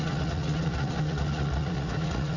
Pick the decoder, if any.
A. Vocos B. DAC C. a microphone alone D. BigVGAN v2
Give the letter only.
A